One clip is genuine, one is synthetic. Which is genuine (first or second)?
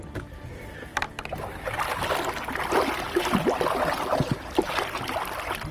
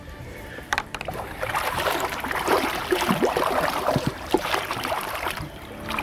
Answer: first